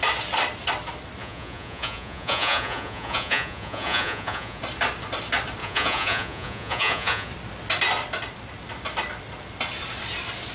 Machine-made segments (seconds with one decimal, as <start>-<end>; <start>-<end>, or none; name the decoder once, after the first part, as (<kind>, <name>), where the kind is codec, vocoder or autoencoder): 1.2-4.6 (vocoder, Vocos); 5.6-7.3